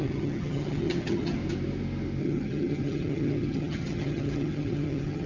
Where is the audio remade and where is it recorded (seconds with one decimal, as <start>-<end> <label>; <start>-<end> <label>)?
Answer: 0.0-1.4 remade; 1.4-2.2 recorded; 2.2-5.3 remade